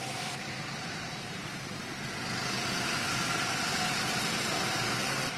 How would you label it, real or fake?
real